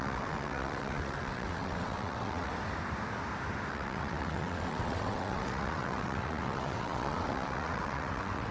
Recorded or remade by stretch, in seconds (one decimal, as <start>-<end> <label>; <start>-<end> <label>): 0.0-2.5 remade; 2.5-3.7 recorded; 3.7-8.5 remade